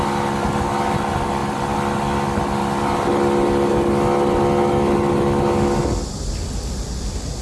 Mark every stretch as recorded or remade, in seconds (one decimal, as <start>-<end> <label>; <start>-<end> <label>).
0.0-7.4 recorded